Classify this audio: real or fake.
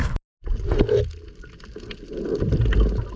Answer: real